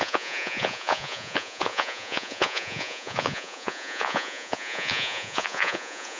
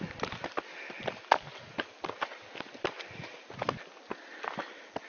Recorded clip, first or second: second